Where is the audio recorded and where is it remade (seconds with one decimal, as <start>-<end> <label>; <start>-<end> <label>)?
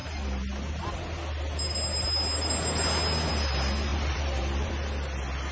0.0-3.9 recorded; 3.9-4.7 remade; 4.7-5.5 recorded